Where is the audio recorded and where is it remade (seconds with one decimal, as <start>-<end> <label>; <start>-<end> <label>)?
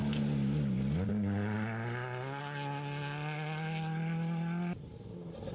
0.0-5.5 recorded